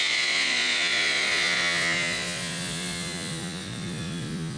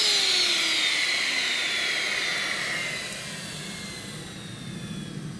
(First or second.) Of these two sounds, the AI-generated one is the first